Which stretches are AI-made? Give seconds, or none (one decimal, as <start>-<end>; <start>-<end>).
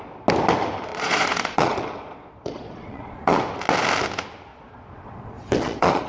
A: 0.9-3.4; 4.5-6.1